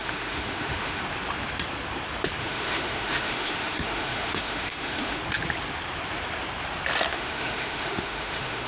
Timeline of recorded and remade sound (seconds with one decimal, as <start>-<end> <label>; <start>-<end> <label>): 0.0-1.0 remade; 1.0-2.4 recorded; 2.4-5.2 remade; 5.2-7.1 recorded; 7.1-8.7 remade